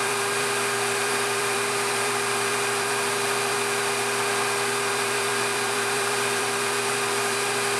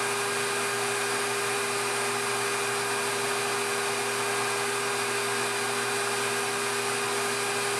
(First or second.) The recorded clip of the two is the second